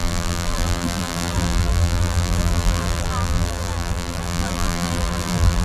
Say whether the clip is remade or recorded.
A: remade